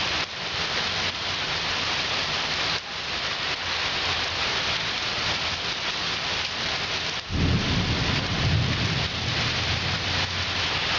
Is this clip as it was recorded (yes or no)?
yes